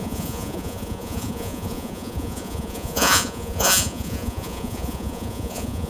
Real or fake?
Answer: fake